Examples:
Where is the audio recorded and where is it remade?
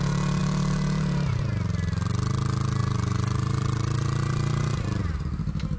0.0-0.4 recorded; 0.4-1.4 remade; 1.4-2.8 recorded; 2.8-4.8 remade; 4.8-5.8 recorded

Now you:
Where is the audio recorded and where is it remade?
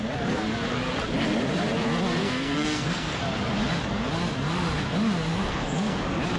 0.0-2.2 recorded; 2.2-3.2 remade; 3.2-5.3 recorded; 5.3-6.0 remade; 6.0-6.4 recorded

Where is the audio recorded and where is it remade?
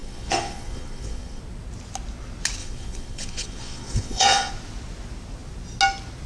0.0-1.4 remade; 1.4-2.6 recorded; 2.6-4.5 remade; 4.5-6.3 recorded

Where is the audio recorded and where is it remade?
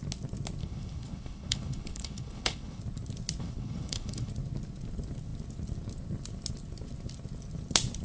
0.0-0.6 recorded; 0.6-2.8 remade; 2.8-3.4 recorded; 3.4-4.3 remade; 4.3-8.0 recorded